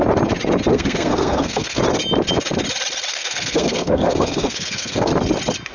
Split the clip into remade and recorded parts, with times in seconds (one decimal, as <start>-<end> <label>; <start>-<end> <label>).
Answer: 0.0-0.7 recorded; 0.7-1.8 remade; 1.8-3.1 recorded; 3.1-5.1 remade; 5.1-5.7 recorded